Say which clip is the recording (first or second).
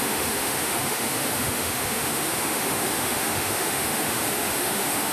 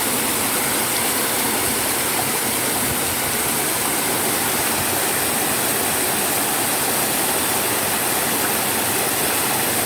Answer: second